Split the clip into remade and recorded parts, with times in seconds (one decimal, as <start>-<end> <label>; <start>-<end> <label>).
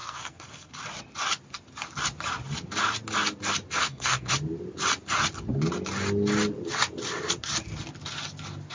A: 0.0-0.7 remade; 0.7-3.8 recorded; 3.8-4.3 remade; 4.3-8.7 recorded